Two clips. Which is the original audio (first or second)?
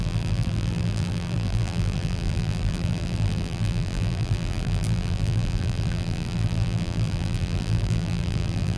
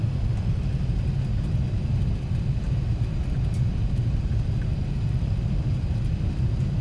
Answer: second